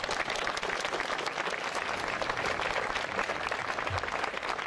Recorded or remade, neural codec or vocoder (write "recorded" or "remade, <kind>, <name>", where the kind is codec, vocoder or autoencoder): recorded